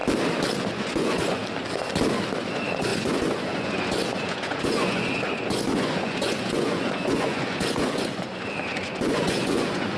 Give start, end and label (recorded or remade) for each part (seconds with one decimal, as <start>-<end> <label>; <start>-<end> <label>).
0.0-0.7 recorded; 0.7-1.4 remade; 1.4-2.4 recorded; 2.4-10.0 remade